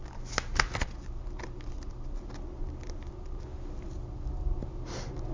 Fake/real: real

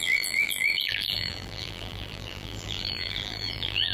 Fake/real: fake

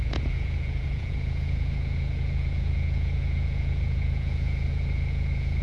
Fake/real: fake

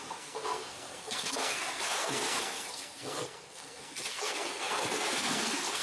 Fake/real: fake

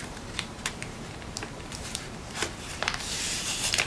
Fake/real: fake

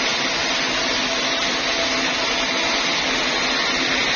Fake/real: real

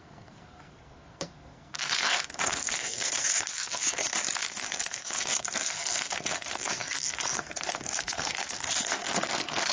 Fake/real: fake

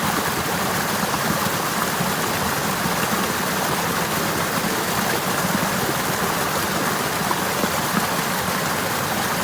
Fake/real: real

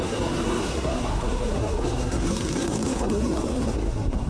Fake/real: fake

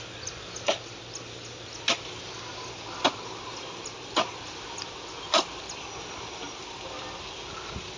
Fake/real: real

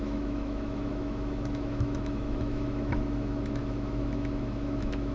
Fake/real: fake